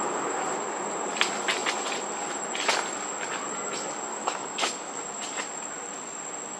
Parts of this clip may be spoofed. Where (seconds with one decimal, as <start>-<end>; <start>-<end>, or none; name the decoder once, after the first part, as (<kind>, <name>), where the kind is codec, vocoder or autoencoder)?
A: 4.1-5.0 (codec, DAC)